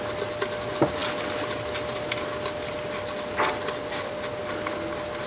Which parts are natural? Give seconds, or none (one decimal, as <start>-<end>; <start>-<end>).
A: 0.0-5.3